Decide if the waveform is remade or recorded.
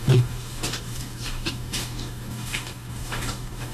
remade